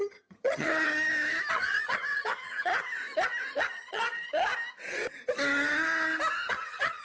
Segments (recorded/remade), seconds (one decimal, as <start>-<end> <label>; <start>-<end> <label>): 0.0-0.9 remade; 0.9-1.5 recorded; 1.5-2.7 remade; 2.7-3.6 recorded; 3.6-4.4 remade; 4.4-6.5 recorded; 6.5-7.0 remade